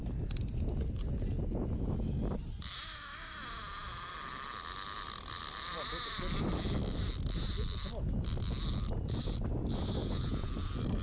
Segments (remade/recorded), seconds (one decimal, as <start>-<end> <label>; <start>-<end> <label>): 0.0-10.0 recorded; 10.0-10.5 remade; 10.5-11.0 recorded